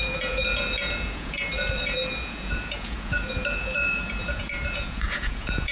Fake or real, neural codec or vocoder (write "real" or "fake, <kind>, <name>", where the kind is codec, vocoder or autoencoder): fake, vocoder, Vocos